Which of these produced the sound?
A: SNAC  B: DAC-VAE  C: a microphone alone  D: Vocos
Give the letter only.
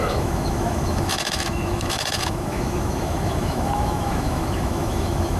B